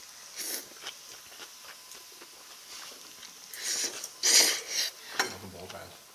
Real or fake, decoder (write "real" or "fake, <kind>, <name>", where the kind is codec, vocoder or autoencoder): real